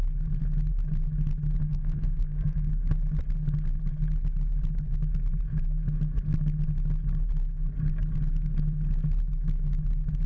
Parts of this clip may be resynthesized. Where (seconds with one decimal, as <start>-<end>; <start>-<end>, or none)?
1.6-2.7